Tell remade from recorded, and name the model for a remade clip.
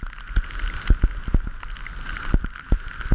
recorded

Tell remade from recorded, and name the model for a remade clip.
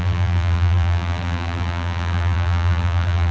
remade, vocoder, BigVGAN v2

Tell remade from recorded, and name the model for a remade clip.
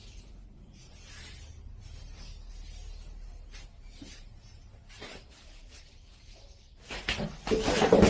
recorded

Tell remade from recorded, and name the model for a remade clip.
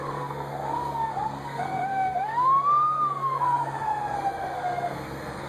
remade, codec, SNAC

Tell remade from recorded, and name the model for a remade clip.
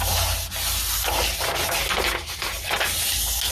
recorded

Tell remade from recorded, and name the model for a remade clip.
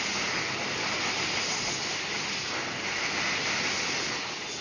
recorded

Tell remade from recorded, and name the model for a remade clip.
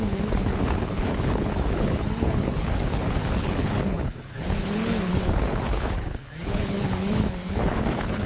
remade, codec, HILCodec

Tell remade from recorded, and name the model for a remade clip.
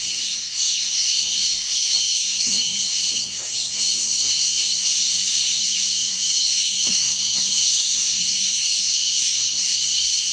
remade, codec, SNAC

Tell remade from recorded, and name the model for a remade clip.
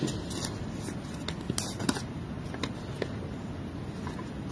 recorded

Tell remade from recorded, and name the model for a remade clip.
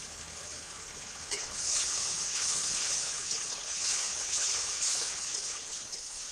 remade, codec, HILCodec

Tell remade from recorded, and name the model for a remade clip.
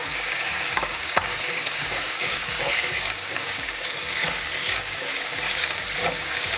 remade, codec, DAC